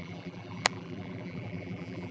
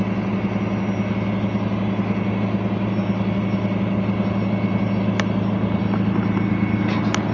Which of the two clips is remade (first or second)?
first